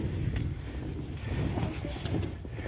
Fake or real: real